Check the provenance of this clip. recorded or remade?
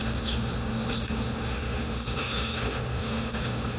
remade